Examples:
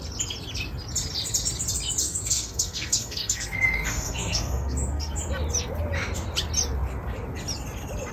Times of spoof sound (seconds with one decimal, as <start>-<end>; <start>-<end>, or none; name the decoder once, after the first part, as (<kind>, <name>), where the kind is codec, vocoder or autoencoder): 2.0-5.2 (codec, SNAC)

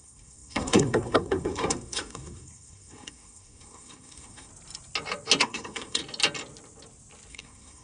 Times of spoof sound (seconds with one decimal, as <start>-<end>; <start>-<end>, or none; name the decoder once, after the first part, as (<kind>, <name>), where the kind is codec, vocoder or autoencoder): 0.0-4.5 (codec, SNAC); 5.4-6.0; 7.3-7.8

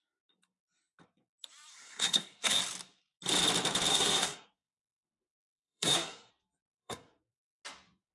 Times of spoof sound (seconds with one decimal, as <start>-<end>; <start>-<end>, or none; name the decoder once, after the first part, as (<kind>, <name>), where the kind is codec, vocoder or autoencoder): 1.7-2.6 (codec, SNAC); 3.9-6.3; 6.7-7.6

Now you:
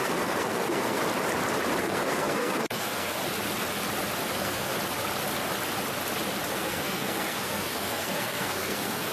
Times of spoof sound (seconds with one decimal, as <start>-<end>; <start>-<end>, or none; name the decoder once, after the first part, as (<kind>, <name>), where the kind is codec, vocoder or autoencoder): 0.0-1.0 (codec, SNAC); 1.8-3.2; 4.3-4.7; 6.5-9.1

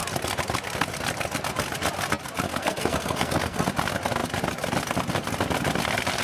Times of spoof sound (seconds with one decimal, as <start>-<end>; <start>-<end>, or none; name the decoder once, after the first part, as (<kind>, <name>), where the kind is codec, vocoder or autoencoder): 2.5-3.6 (codec, SNAC)

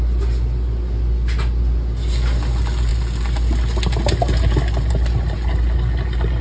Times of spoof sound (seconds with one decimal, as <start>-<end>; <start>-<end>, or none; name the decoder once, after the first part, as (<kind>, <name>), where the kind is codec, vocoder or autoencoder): none

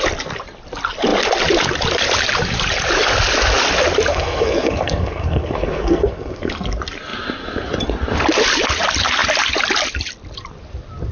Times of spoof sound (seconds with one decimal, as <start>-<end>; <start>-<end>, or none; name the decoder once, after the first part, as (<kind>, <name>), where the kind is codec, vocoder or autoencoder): 4.1-6.5 (codec, SNAC)